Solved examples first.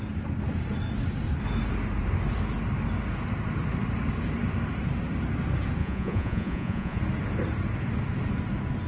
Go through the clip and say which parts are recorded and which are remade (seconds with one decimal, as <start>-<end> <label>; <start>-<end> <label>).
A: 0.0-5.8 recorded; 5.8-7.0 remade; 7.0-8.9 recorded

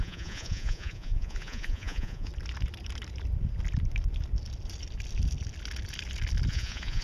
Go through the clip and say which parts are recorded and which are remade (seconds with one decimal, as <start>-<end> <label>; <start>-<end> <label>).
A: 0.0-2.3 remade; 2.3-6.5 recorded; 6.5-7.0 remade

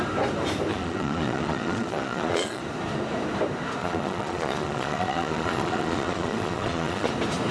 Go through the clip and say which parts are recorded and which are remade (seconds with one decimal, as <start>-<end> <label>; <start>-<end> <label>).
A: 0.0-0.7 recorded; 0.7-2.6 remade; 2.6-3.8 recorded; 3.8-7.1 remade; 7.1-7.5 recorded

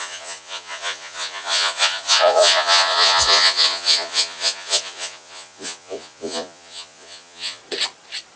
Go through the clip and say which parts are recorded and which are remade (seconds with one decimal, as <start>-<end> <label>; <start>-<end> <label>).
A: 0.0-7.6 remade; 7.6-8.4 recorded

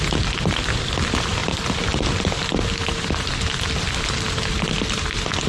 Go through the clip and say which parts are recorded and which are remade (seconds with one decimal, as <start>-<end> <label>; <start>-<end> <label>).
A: 0.0-5.5 recorded

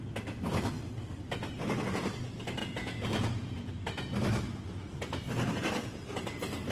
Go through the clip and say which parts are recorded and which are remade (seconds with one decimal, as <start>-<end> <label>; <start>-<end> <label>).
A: 0.0-2.6 recorded; 2.6-3.7 remade; 3.7-6.7 recorded

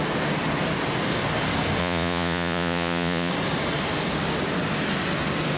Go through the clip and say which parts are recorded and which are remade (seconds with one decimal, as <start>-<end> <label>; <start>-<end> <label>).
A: 0.0-1.8 recorded; 1.8-3.3 remade; 3.3-5.6 recorded

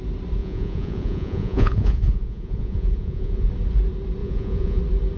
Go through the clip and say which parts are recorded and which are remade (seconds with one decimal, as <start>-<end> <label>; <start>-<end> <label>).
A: 0.0-0.4 recorded; 0.4-3.5 remade; 3.5-4.2 recorded; 4.2-4.8 remade; 4.8-5.2 recorded